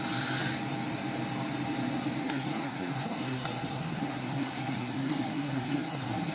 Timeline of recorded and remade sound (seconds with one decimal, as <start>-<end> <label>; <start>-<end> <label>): 0.0-2.2 recorded; 2.2-6.3 remade

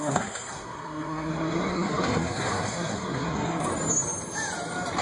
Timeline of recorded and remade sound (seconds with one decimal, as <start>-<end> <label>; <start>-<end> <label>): 0.0-3.7 remade; 3.7-5.0 recorded

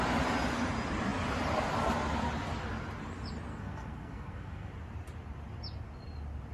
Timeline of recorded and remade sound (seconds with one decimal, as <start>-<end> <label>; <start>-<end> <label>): 0.0-3.5 recorded; 3.5-4.7 remade; 4.7-6.5 recorded

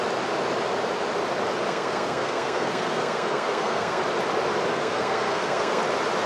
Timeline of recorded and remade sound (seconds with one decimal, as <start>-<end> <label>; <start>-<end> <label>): 0.0-1.7 recorded; 1.7-4.0 remade; 4.0-4.7 recorded; 4.7-5.8 remade; 5.8-6.3 recorded

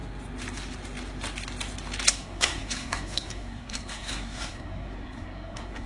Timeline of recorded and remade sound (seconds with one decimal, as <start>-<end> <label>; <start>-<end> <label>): 0.0-2.1 recorded; 2.1-5.9 remade

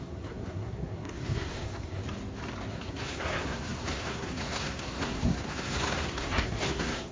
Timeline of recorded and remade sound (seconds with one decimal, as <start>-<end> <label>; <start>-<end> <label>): 0.0-2.0 remade; 2.0-2.7 recorded; 2.7-7.1 remade